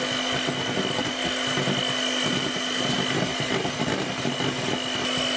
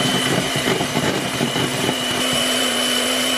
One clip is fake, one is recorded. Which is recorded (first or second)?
first